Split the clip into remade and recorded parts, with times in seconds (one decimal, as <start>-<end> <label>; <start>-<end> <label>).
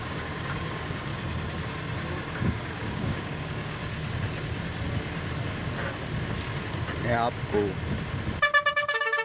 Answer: 0.0-1.1 remade; 1.1-2.3 recorded; 2.3-3.8 remade; 3.8-8.7 recorded; 8.7-9.2 remade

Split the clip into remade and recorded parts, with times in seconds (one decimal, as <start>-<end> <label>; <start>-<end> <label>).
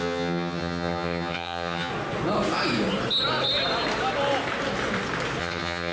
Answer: 0.0-1.9 remade; 1.9-5.4 recorded; 5.4-5.9 remade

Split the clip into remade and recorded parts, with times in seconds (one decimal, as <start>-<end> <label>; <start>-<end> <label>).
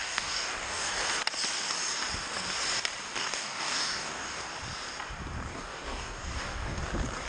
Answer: 0.0-0.9 remade; 0.9-3.2 recorded; 3.2-4.4 remade; 4.4-5.5 recorded; 5.5-6.8 remade; 6.8-7.3 recorded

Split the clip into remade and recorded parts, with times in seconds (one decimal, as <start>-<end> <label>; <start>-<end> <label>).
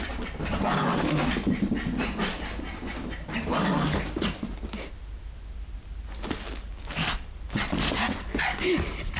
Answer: 0.0-9.2 recorded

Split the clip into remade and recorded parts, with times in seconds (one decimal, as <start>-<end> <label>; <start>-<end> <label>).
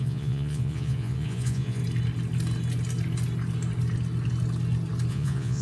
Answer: 0.0-1.8 remade; 1.8-5.1 recorded; 5.1-5.6 remade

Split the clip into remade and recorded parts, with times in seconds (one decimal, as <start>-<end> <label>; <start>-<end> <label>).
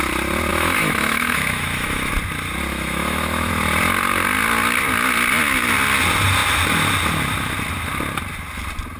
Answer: 0.0-0.5 recorded; 0.5-2.1 remade; 2.1-2.7 recorded; 2.7-3.5 remade; 3.5-9.0 recorded